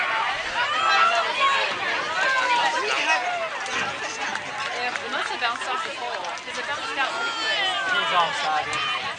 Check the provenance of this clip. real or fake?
real